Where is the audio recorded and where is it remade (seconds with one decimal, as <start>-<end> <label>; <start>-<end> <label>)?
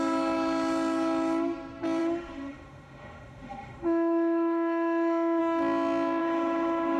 0.0-2.0 recorded; 2.0-5.4 remade; 5.4-6.2 recorded; 6.2-7.0 remade